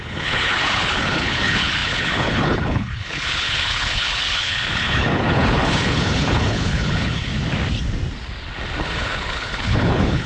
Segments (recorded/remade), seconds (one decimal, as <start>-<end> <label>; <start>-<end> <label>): 0.0-7.3 remade; 7.3-8.8 recorded; 8.8-10.3 remade